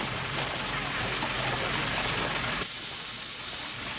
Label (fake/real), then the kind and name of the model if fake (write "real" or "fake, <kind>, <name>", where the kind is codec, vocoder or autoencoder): real